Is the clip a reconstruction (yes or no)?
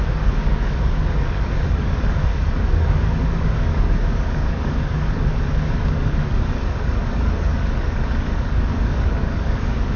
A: yes